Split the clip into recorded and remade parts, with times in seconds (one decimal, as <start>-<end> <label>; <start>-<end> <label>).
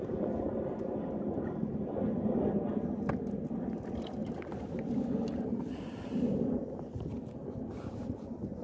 0.0-8.6 recorded